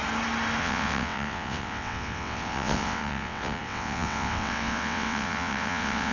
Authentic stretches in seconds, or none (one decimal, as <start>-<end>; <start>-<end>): 0.0-0.6